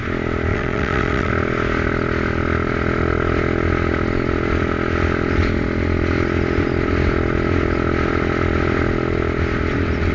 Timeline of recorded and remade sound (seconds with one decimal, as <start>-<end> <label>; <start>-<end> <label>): 0.0-0.5 recorded; 0.5-1.3 remade; 1.3-10.1 recorded